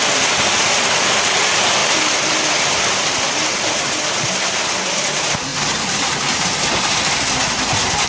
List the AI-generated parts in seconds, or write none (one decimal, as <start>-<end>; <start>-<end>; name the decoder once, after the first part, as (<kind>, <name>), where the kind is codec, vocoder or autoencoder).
none